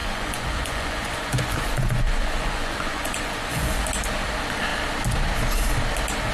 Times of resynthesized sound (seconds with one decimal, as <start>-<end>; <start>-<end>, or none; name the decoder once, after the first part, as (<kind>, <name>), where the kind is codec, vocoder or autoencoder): 0.0-3.8 (vocoder, Vocos)